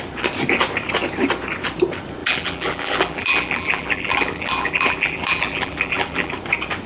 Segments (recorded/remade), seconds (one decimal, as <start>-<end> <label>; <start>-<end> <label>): 0.0-2.2 recorded; 2.2-6.3 remade; 6.3-6.9 recorded